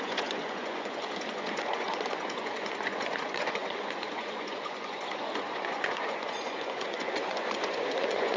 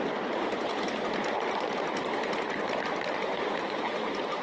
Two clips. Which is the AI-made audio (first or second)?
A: first